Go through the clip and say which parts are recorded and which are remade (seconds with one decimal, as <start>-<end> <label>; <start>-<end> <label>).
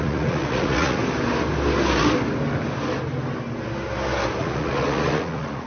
0.0-1.0 remade; 1.0-4.4 recorded; 4.4-5.7 remade